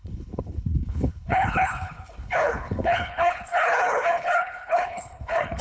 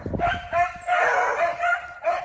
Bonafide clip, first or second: second